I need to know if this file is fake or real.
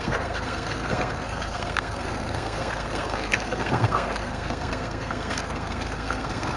fake